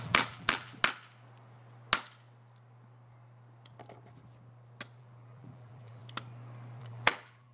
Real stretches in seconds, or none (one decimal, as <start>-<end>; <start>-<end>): 0.7-5.0; 6.0-6.8